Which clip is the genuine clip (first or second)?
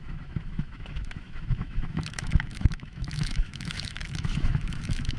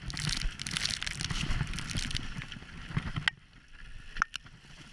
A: second